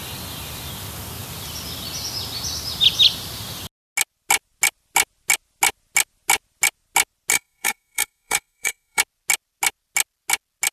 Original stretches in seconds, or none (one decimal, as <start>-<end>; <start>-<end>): 0.0-7.3; 9.0-10.7